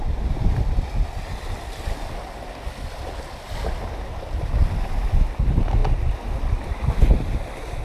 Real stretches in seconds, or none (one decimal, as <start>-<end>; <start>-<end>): 0.0-7.8